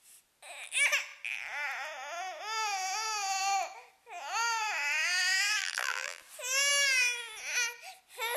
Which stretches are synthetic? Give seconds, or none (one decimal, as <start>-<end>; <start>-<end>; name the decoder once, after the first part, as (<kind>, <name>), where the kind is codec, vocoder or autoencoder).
5.6-6.2 (vocoder, BigVGAN v2)